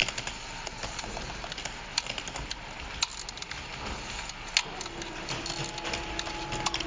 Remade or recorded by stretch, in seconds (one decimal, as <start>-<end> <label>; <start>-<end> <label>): 0.0-6.9 recorded